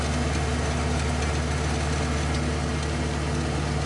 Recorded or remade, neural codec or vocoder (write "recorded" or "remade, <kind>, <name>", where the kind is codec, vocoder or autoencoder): recorded